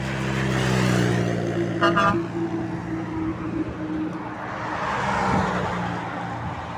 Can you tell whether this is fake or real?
real